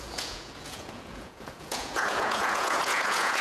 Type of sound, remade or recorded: remade